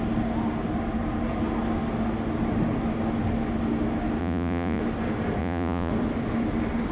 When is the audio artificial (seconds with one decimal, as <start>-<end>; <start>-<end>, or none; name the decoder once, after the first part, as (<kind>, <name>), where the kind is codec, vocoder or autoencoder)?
4.2-4.8 (vocoder, Vocos); 5.4-5.9